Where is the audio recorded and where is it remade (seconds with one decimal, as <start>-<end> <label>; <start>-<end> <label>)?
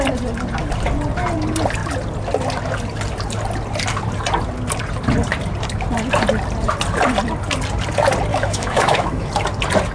0.0-8.3 recorded; 8.3-9.3 remade; 9.3-9.9 recorded